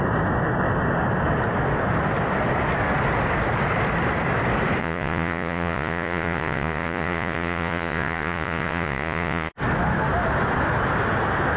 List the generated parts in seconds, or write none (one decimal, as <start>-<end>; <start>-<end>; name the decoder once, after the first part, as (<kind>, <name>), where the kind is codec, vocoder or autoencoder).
4.8-9.5 (vocoder, Vocos)